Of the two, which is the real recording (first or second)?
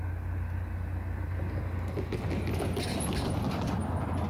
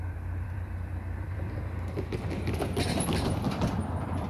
first